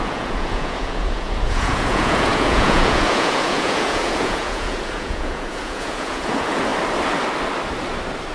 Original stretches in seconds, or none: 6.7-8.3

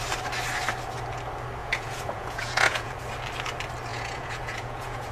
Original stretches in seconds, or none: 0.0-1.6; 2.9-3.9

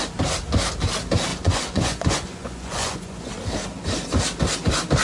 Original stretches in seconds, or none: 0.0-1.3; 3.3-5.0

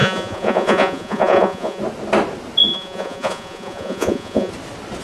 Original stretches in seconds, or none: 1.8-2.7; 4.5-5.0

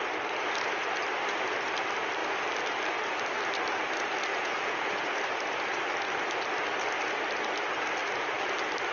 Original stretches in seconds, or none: 0.0-4.3; 5.2-8.9

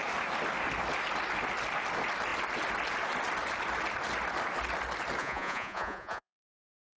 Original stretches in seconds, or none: 0.0-5.2